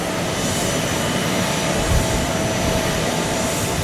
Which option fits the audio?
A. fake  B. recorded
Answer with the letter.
B